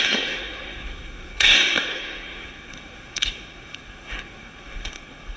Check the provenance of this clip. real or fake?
fake